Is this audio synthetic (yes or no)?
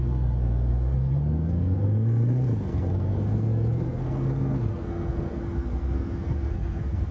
yes